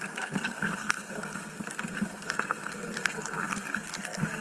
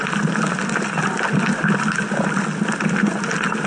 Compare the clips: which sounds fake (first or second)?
first